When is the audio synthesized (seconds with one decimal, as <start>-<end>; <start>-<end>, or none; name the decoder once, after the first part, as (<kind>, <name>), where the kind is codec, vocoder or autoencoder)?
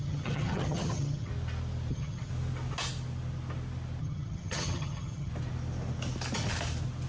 0.0-1.3 (vocoder, HiFi-GAN); 1.9-2.3; 4.0-5.3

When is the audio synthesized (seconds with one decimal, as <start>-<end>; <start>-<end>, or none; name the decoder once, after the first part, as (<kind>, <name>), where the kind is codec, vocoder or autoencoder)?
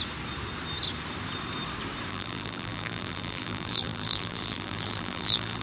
2.1-5.6 (vocoder, BigVGAN v2)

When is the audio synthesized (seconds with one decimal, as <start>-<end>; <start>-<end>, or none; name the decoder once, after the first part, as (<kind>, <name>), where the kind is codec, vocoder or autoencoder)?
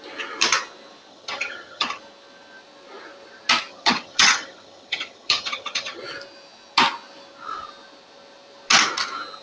1.1-2.0 (vocoder, HiFi-GAN); 3.7-6.0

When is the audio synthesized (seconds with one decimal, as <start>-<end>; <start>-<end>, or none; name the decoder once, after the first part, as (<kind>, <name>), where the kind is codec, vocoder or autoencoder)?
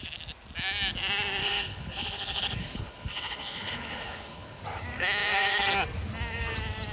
1.4-4.6 (codec, HILCodec)